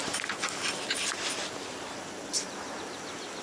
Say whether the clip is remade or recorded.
recorded